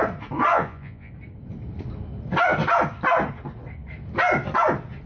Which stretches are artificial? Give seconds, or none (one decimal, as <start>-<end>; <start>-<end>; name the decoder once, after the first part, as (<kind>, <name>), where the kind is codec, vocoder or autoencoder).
0.5-1.1 (vocoder, Vocos)